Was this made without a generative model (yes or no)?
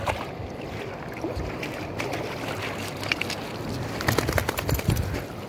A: yes